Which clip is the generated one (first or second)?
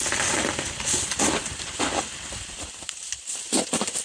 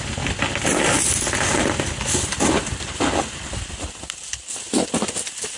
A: first